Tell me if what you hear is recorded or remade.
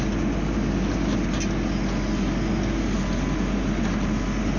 recorded